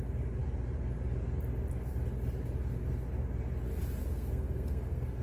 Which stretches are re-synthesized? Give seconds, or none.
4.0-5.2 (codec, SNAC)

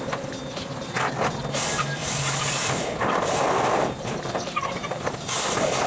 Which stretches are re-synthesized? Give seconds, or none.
none